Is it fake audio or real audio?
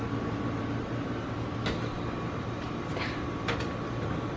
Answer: real